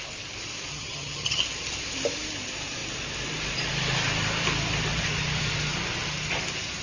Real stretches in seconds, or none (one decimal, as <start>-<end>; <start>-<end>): 0.0-0.7; 1.4-6.8